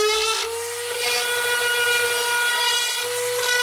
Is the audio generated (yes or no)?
no